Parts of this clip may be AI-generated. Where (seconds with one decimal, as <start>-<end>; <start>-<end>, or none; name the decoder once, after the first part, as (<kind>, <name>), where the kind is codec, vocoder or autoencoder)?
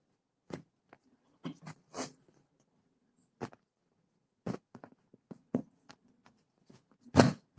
0.0-7.6 (vocoder, Vocos)